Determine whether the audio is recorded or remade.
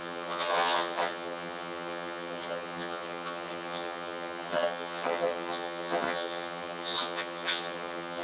remade